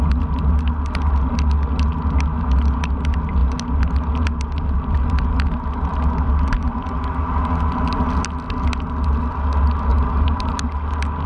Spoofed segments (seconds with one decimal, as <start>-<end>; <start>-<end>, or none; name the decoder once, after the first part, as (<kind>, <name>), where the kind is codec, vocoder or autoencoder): 9.9-10.5 (vocoder, BigVGAN v2)